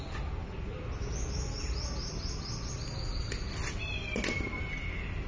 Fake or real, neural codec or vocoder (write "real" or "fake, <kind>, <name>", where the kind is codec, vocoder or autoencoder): real